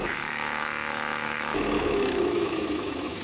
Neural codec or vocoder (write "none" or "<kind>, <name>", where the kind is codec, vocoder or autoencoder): autoencoder, DAC-VAE